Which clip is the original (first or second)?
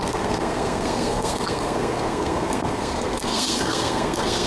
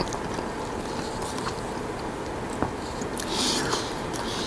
second